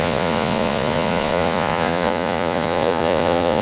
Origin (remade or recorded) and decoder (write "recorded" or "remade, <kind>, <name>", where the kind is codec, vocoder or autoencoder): remade, vocoder, Vocos